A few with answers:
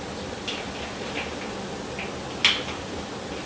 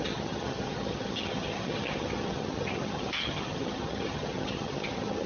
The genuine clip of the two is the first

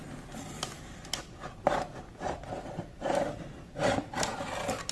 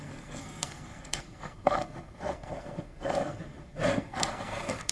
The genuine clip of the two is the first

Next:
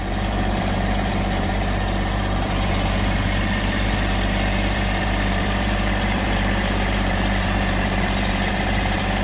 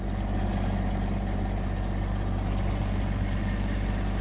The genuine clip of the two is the second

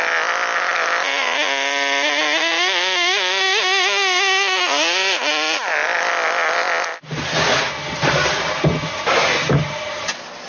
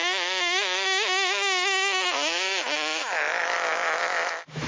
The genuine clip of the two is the first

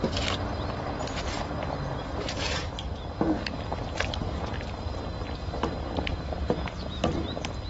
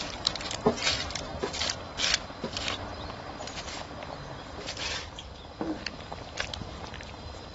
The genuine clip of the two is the first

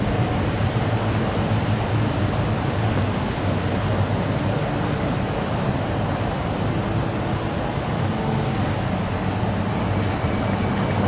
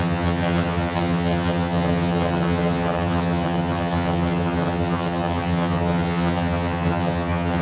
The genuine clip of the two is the first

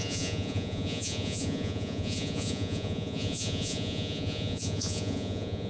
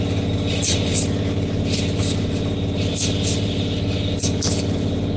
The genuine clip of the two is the second